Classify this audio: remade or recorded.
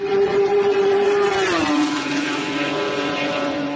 remade